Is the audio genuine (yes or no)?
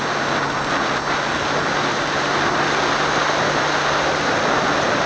yes